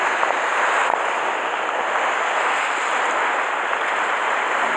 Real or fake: real